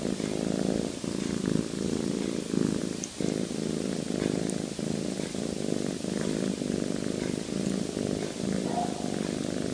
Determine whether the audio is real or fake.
real